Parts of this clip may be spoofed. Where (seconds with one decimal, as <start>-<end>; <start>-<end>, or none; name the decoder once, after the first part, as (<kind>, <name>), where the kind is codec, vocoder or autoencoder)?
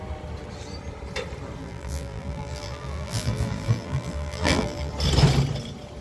1.6-4.9 (vocoder, BigVGAN v2)